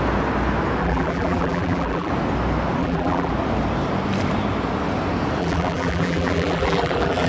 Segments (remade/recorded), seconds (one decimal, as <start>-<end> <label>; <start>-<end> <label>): 0.0-0.8 recorded; 0.8-2.1 remade; 2.1-2.8 recorded; 2.8-3.3 remade; 3.3-5.4 recorded; 5.4-7.3 remade